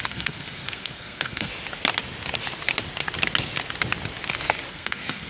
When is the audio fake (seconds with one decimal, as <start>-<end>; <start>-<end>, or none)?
0.0-1.5; 4.7-5.3